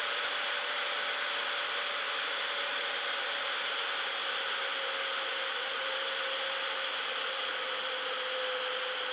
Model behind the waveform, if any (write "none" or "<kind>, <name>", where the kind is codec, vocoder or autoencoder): none